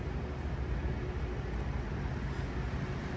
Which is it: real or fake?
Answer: real